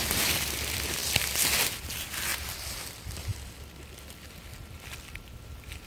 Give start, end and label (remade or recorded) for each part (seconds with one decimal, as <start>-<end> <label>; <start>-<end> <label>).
0.0-1.0 remade; 1.0-1.9 recorded; 1.9-5.9 remade